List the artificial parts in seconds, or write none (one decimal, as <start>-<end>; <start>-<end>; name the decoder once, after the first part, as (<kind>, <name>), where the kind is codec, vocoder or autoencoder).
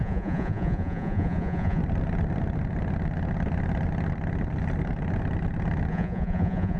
0.0-1.8 (vocoder, Vocos); 5.9-6.8